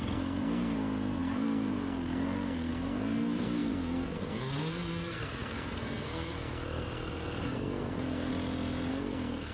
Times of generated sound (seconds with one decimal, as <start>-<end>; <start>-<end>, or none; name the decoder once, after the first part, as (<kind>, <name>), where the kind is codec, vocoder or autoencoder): 0.0-8.3 (codec, SNAC); 8.9-9.5